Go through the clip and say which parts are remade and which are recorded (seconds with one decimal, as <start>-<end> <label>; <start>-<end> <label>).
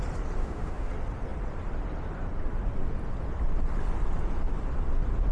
0.0-0.4 recorded; 0.4-0.9 remade; 0.9-5.3 recorded